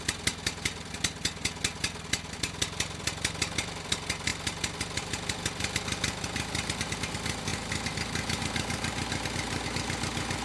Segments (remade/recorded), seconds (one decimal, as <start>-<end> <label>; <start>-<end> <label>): 0.0-10.4 recorded